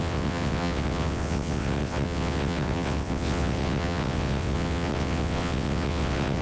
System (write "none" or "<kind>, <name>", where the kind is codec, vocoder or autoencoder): vocoder, WaveNeXt